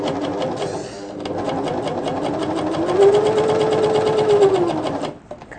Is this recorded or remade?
recorded